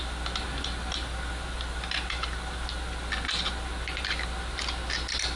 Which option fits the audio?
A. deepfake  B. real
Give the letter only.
B